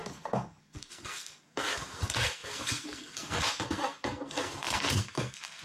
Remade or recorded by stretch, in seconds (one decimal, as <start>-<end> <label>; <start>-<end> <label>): 0.0-5.6 remade